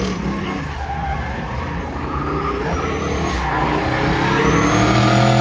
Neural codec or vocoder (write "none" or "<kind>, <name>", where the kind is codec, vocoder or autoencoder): none